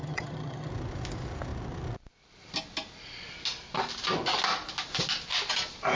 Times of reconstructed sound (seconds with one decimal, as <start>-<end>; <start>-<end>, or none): 0.0-0.7